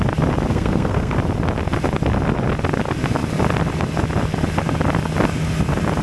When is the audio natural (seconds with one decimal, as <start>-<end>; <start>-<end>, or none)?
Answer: 0.0-0.5; 1.2-6.0